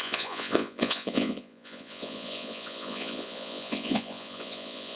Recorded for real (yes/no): no